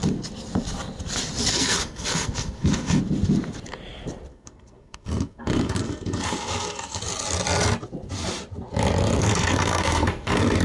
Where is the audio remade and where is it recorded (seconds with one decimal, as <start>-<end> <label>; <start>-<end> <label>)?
0.0-1.5 recorded; 1.5-3.0 remade; 3.0-4.3 recorded; 4.3-7.0 remade; 7.0-9.2 recorded; 9.2-10.6 remade